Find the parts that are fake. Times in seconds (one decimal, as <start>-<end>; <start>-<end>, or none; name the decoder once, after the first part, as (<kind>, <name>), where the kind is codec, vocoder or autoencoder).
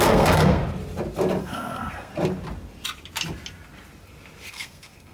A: 0.0-0.6 (codec, SNAC); 1.4-2.1; 4.5-5.1